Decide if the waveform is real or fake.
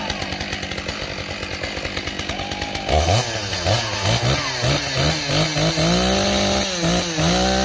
real